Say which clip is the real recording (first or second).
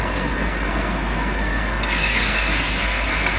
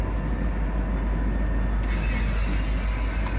second